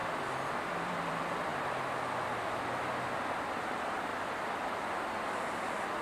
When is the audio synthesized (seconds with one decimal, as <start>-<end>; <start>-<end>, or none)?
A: 0.7-1.5; 3.4-4.1